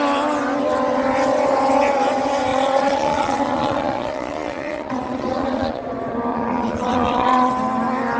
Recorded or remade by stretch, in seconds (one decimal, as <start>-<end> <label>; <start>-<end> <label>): 0.0-2.5 recorded; 2.5-5.8 remade; 5.8-6.3 recorded; 6.3-7.5 remade; 7.5-8.2 recorded